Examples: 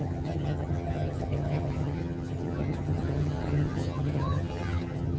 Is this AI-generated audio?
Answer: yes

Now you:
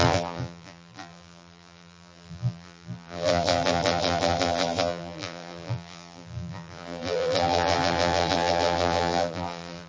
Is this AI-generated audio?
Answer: yes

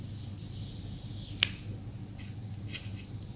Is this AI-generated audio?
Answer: no